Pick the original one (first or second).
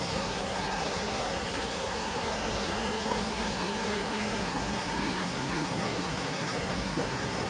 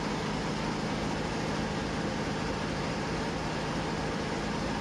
second